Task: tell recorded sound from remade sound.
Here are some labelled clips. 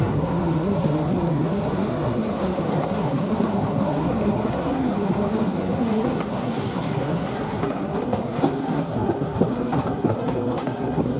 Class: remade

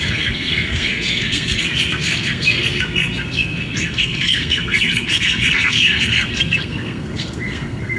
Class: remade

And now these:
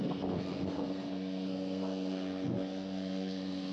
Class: remade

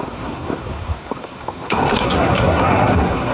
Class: remade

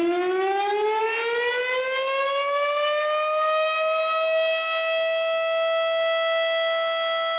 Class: recorded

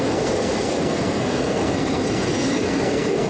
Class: remade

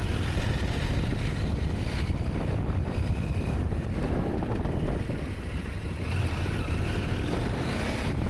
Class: recorded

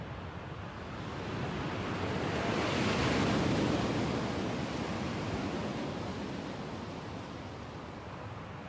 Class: recorded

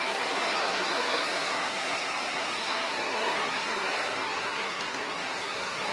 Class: remade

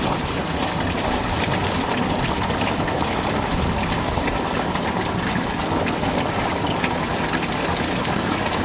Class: recorded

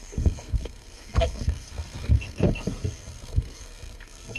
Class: remade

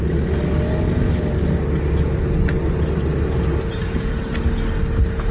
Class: recorded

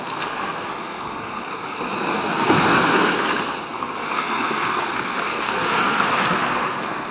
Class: remade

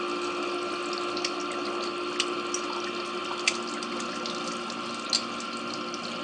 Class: recorded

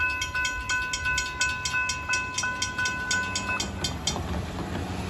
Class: recorded